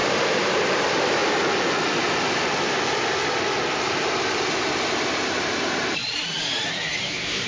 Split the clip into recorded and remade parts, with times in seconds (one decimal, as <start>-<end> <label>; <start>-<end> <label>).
0.0-1.2 remade; 1.2-3.8 recorded; 3.8-7.5 remade